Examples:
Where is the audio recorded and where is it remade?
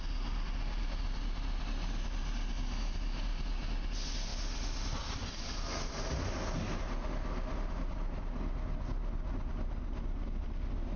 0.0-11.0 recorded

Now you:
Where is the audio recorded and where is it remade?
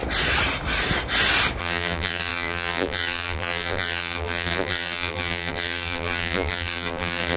0.0-1.6 recorded; 1.6-7.4 remade